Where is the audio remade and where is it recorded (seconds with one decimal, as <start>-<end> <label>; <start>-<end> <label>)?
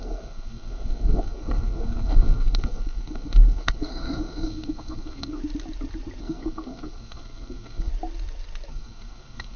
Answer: 0.0-5.4 remade; 5.4-6.2 recorded; 6.2-7.9 remade; 7.9-8.7 recorded; 8.7-9.6 remade